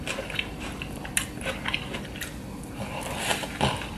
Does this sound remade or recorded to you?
recorded